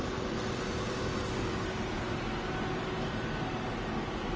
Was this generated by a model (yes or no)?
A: no